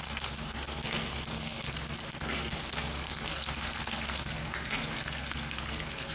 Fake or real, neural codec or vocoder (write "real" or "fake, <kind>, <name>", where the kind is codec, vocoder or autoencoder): fake, codec, SNAC